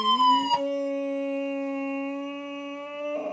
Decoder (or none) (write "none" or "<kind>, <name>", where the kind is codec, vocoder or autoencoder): none